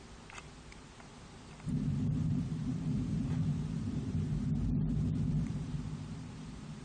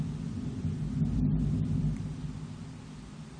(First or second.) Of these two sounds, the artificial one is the first